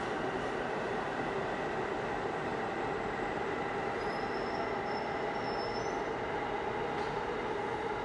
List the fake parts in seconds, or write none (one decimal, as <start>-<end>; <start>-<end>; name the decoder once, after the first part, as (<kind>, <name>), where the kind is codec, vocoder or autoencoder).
none